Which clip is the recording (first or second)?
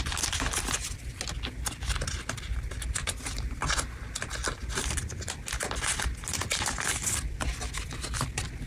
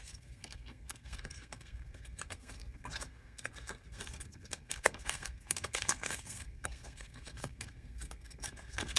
first